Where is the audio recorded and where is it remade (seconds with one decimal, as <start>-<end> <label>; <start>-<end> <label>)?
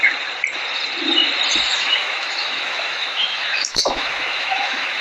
0.0-1.7 recorded; 1.7-5.0 remade